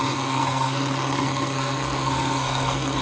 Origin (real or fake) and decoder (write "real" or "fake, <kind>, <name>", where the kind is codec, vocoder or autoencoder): fake, codec, SNAC